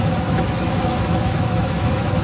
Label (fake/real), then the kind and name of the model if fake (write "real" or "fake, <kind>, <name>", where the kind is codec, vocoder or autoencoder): fake, autoencoder, DAC-VAE